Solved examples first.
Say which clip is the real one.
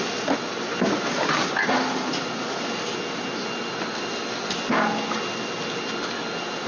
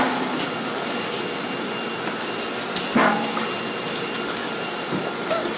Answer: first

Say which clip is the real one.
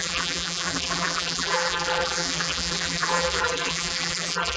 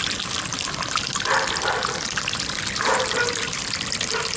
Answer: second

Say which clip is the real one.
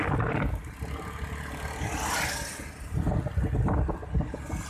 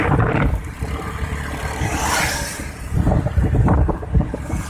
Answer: first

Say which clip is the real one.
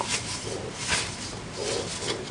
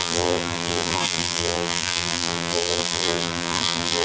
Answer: first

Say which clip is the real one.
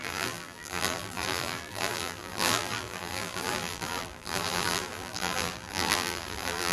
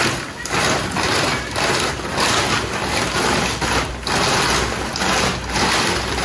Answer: second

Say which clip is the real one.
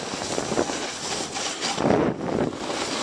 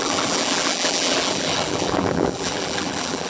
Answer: first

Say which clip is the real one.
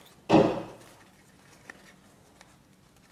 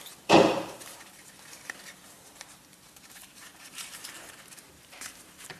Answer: first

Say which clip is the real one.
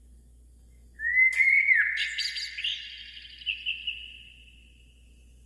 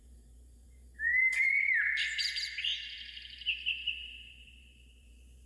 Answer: first